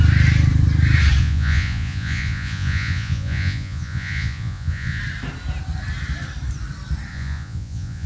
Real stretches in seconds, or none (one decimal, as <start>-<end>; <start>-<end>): 0.0-1.2; 5.0-7.1